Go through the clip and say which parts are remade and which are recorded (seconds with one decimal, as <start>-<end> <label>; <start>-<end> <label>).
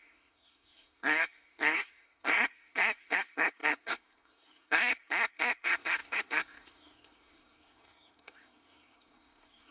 0.0-9.7 remade